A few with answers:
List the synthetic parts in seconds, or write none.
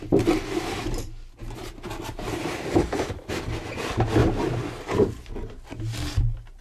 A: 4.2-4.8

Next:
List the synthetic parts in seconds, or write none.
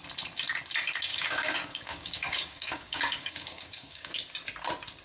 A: 1.1-4.1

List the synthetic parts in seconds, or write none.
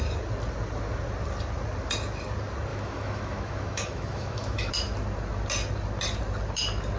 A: 2.7-4.7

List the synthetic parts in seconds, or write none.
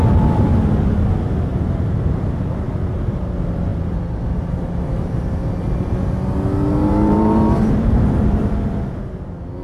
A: 1.5-3.2; 6.9-8.5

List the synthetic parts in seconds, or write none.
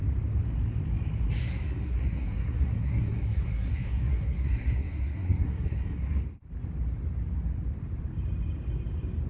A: 1.4-6.2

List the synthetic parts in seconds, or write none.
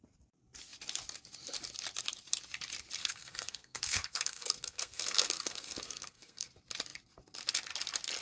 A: 3.0-6.5